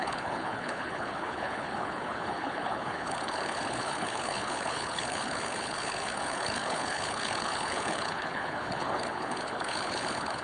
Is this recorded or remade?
remade